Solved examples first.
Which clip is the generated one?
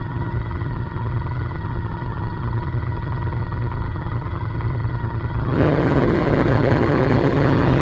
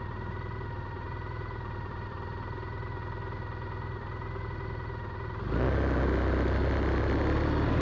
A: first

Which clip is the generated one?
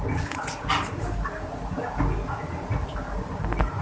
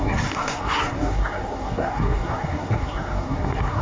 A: second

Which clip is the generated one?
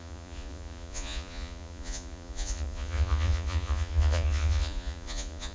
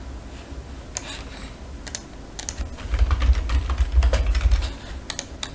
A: first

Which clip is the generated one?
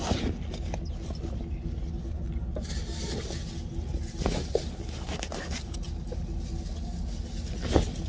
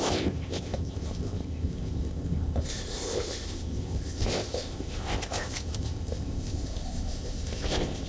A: second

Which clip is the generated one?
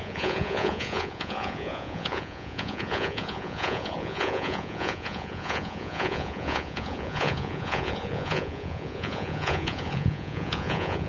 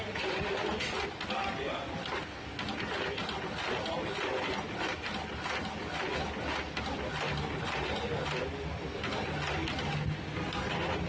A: first